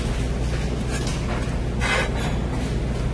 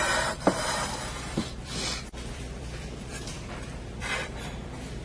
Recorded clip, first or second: first